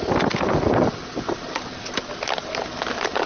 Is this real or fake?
real